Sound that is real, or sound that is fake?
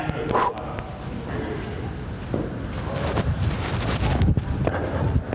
real